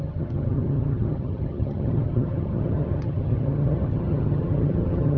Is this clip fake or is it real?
fake